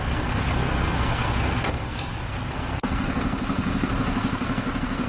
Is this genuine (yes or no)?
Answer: no